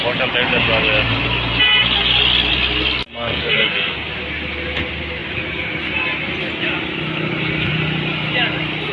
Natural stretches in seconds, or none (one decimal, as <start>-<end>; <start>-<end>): 0.0-3.1; 4.1-8.9